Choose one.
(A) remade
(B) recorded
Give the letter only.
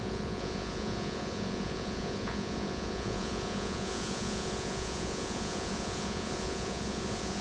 A